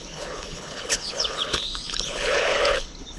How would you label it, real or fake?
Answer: fake